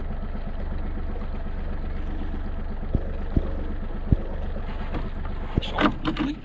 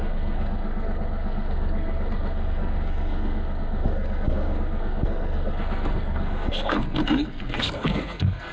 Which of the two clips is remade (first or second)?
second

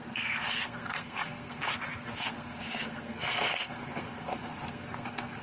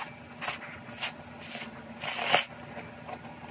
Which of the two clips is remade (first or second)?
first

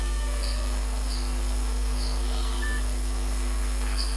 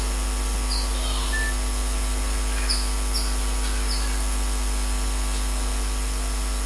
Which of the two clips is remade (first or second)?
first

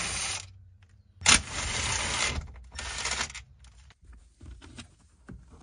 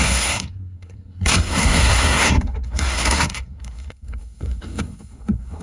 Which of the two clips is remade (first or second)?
second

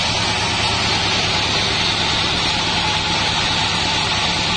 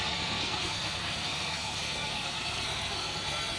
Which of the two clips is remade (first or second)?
second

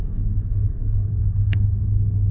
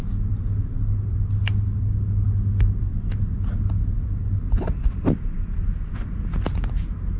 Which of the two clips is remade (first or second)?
first